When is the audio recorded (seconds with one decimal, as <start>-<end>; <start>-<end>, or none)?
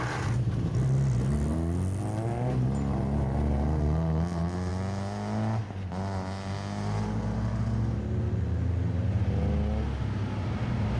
0.0-11.0